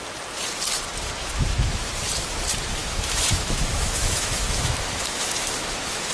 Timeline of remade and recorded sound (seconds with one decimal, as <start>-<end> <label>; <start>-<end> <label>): 0.0-1.2 recorded; 1.2-1.9 remade; 1.9-2.8 recorded; 2.8-6.1 remade